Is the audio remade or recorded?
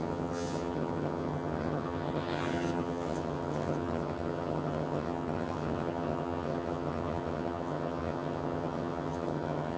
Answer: remade